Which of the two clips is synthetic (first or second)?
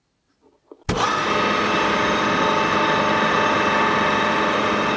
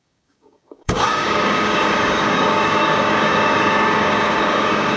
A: second